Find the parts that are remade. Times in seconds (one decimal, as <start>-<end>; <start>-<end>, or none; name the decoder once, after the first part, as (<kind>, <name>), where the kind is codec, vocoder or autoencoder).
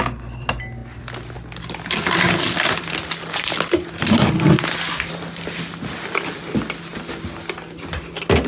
none